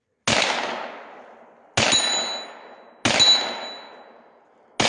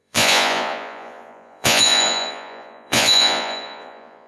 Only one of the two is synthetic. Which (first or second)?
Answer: second